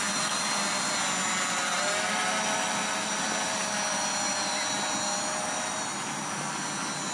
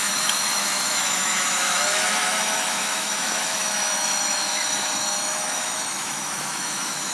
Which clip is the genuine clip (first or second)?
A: first